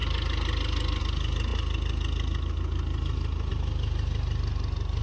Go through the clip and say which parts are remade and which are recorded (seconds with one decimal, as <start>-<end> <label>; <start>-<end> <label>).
0.0-5.0 recorded

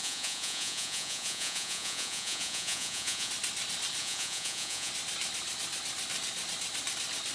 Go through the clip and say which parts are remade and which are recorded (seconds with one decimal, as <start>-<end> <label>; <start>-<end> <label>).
0.0-3.3 remade; 3.3-4.0 recorded; 4.0-4.9 remade; 4.9-7.3 recorded

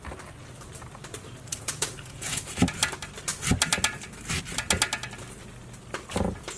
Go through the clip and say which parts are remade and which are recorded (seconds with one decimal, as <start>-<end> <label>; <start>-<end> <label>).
0.0-1.5 recorded; 1.5-2.6 remade; 2.6-6.6 recorded

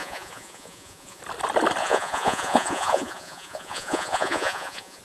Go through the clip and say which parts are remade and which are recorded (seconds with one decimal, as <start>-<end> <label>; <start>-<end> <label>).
0.0-1.2 remade; 1.2-1.8 recorded; 1.8-5.0 remade

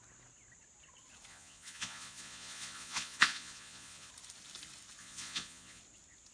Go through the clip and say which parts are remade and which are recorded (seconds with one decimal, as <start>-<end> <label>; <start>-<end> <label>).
0.0-1.3 recorded; 1.3-4.1 remade; 4.1-5.0 recorded; 5.0-5.8 remade; 5.8-6.3 recorded

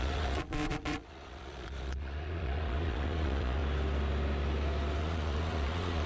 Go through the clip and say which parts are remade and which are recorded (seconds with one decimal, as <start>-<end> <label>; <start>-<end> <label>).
0.0-3.6 remade; 3.6-5.0 recorded; 5.0-6.1 remade

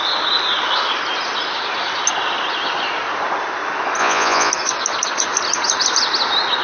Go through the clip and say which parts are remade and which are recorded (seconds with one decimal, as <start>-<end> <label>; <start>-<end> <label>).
0.0-4.0 recorded; 4.0-4.5 remade; 4.5-6.6 recorded

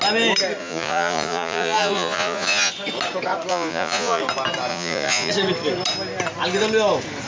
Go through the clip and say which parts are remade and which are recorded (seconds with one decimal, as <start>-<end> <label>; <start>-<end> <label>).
0.0-0.6 recorded; 0.6-2.7 remade; 2.7-3.5 recorded; 3.5-4.2 remade; 4.2-4.7 recorded; 4.7-5.3 remade; 5.3-7.3 recorded